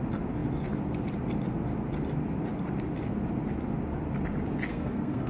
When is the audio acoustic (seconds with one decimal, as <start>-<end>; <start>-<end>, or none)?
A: 0.0-4.7